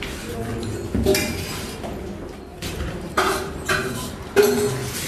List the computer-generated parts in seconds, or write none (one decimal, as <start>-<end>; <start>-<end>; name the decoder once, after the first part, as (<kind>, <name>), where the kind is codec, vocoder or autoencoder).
2.5-3.7 (vocoder, BigVGAN v2)